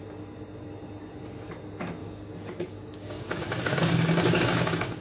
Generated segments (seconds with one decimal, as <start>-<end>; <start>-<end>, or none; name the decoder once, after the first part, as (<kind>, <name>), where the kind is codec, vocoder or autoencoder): 2.0-5.0 (codec, DAC)